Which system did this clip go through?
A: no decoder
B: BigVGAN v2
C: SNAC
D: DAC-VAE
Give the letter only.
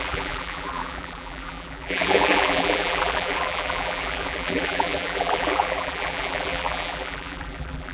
B